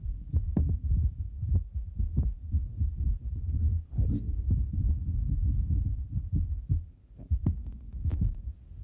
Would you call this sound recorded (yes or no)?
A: no